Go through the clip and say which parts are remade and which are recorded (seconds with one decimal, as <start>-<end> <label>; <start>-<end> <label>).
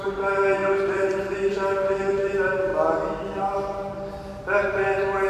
0.0-2.7 remade; 2.7-3.2 recorded; 3.2-5.3 remade